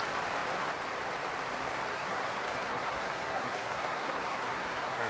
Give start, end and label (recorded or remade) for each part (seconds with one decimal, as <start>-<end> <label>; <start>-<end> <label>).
0.0-1.9 recorded; 1.9-5.1 remade